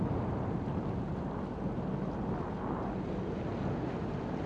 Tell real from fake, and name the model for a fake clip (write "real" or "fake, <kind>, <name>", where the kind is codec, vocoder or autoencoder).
real